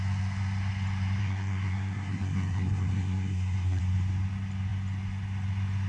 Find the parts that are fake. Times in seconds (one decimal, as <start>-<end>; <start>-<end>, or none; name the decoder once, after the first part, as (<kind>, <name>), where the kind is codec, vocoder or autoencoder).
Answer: 1.2-3.8 (codec, SNAC)